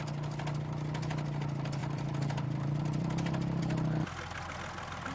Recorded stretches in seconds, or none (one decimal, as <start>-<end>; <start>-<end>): 0.0-1.8; 3.6-5.1